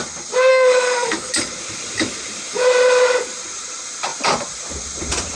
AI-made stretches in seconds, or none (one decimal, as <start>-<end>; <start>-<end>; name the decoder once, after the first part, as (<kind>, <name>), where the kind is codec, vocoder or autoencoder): 0.5-1.3 (autoencoder, DAC-VAE)